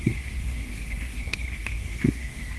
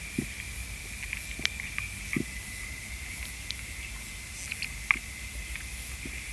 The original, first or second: second